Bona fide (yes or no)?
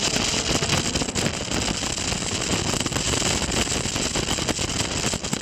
yes